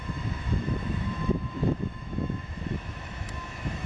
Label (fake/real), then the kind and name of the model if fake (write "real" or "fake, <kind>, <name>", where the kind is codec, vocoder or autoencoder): fake, autoencoder, DAC-VAE